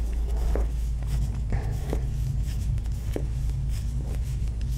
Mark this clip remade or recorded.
remade